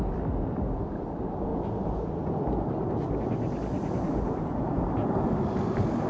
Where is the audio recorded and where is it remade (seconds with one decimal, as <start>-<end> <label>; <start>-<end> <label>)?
0.0-6.1 recorded